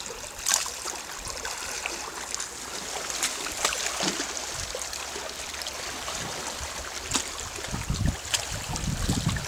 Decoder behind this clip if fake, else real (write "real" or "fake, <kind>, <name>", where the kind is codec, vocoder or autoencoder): real